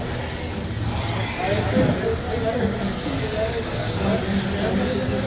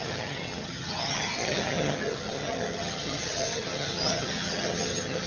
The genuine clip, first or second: first